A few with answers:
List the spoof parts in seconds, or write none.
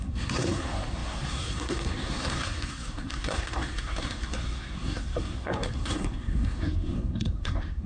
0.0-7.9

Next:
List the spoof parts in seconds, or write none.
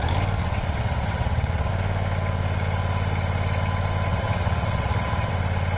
0.4-1.7; 4.1-5.3